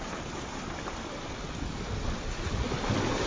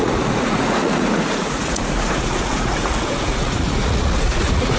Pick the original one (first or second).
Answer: first